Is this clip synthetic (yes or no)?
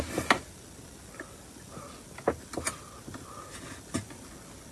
no